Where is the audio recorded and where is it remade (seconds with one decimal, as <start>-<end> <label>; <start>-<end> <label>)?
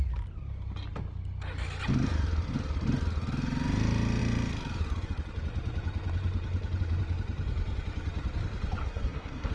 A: 0.0-8.8 recorded; 8.8-9.5 remade